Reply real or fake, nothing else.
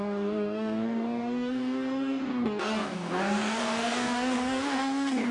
fake